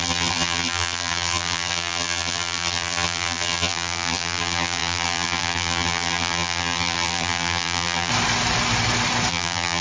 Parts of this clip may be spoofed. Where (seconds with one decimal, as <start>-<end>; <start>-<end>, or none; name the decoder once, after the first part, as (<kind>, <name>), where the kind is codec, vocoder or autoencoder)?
0.0-8.1 (vocoder, BigVGAN v2); 9.3-9.8